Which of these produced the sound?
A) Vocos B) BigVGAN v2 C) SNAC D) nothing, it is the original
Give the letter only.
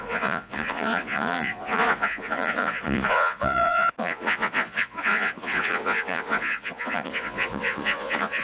A